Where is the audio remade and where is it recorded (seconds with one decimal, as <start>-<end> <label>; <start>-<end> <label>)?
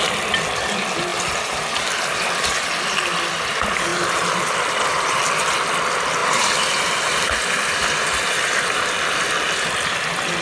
0.0-3.9 recorded; 3.9-5.5 remade; 5.5-6.2 recorded; 6.2-9.9 remade; 9.9-10.4 recorded